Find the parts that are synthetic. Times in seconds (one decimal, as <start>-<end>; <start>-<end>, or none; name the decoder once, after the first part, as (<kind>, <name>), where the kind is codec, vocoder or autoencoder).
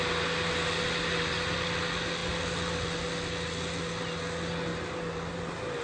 none